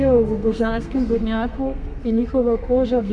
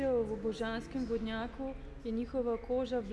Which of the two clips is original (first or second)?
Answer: second